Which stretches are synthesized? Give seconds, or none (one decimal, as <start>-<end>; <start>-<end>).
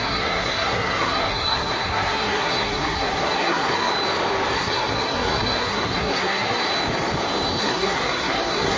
0.0-3.9; 4.5-6.6; 7.6-8.8